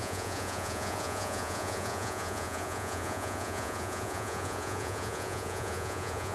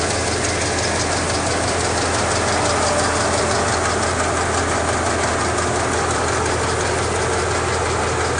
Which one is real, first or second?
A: second